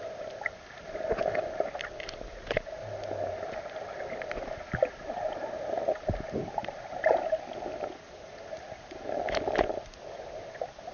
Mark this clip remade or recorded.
recorded